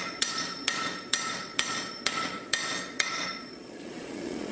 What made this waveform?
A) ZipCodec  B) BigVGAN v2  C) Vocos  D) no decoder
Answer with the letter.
C